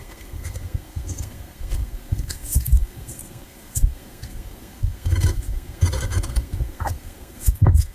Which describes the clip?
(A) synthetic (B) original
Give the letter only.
A